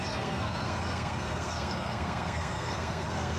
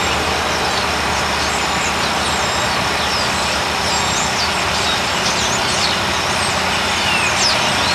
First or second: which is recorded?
second